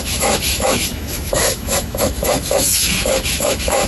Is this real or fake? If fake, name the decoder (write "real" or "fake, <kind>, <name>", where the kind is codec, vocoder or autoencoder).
fake, autoencoder, DAC-VAE